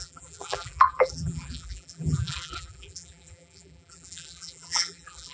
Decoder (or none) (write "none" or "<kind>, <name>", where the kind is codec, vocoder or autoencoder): vocoder, BigVGAN v2